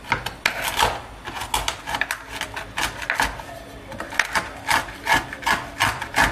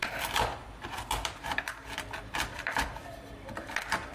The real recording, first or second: first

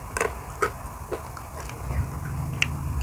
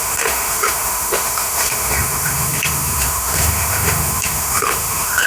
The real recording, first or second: first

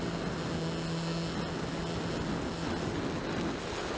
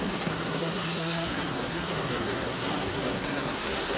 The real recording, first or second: first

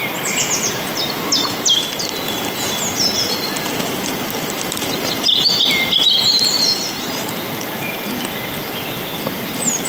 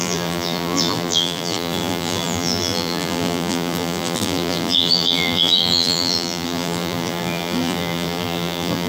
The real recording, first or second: first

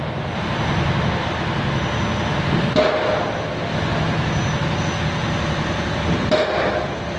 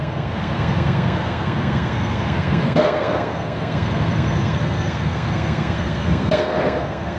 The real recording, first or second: first